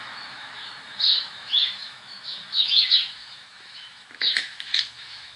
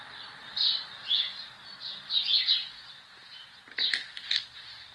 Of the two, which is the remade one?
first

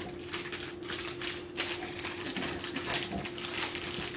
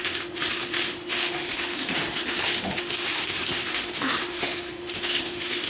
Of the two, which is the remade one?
second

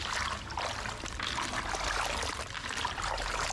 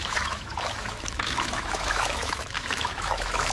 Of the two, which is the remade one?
second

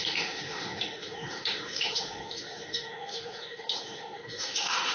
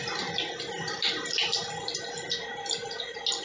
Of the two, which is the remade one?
first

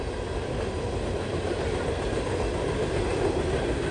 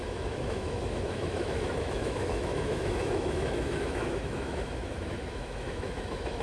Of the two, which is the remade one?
second